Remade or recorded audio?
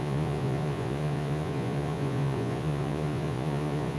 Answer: remade